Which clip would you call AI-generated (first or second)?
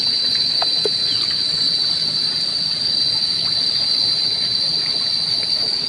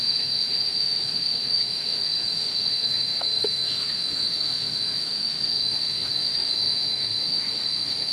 second